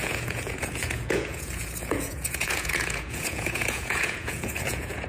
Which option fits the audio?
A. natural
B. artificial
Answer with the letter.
B